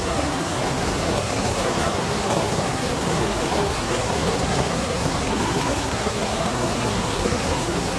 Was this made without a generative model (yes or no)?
no